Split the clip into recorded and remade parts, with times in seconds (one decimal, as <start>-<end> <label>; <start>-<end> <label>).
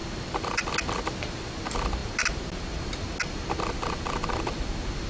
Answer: 0.0-5.1 recorded